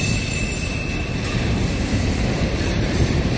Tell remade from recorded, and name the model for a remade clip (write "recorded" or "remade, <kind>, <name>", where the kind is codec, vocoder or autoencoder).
remade, vocoder, BigVGAN v2